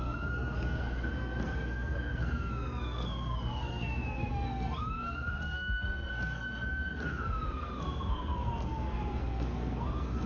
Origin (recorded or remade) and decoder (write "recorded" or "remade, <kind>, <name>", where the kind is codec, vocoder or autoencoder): remade, codec, SNAC